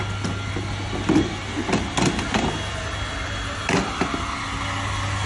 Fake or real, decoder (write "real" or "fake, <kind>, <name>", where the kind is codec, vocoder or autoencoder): real